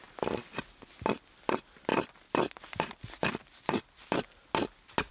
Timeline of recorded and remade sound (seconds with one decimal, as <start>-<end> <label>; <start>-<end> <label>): 0.0-5.1 recorded